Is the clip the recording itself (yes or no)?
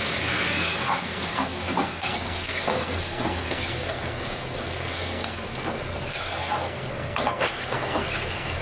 no